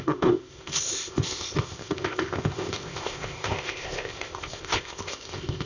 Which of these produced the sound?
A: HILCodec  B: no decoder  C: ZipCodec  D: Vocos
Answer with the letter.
C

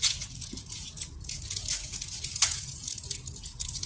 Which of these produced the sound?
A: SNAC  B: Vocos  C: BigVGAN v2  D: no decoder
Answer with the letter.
B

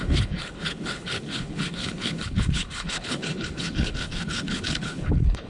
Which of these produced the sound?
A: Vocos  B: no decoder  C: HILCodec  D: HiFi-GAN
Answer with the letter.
C